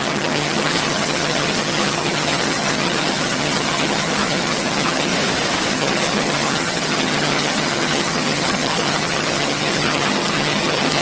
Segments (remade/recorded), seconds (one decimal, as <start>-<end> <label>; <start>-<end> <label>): 0.0-5.1 remade; 5.1-5.7 recorded; 5.7-11.0 remade